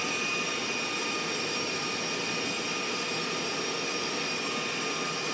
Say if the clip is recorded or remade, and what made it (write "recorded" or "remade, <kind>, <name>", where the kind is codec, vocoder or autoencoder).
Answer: recorded